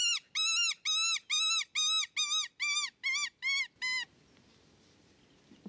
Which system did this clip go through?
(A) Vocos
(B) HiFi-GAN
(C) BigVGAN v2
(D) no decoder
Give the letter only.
D